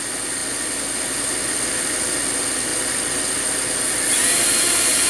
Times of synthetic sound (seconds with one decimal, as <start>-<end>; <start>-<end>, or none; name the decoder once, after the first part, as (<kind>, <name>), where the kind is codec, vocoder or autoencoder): none